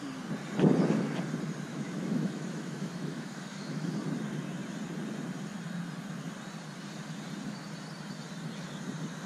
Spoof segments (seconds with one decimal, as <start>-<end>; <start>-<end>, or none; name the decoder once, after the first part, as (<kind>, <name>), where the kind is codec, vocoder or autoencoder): 1.7-3.9 (autoencoder, DAC-VAE)